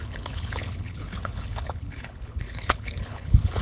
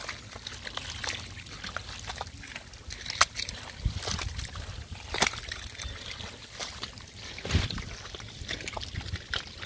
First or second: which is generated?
first